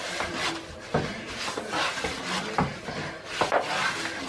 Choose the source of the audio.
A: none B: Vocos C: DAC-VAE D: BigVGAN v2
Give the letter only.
A